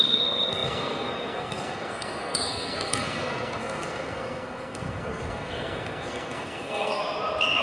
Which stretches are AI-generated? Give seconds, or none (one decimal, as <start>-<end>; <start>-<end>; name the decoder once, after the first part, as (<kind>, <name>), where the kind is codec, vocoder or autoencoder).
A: 0.0-7.0 (codec, SNAC)